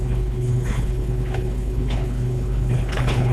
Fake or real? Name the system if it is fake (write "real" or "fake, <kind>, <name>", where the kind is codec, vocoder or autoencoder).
fake, codec, HILCodec